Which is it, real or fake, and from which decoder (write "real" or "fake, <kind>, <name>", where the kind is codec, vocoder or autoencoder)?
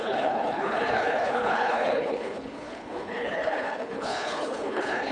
fake, codec, HILCodec